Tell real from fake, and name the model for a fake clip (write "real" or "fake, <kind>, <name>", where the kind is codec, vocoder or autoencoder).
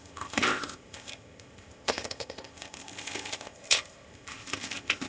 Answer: fake, codec, ZipCodec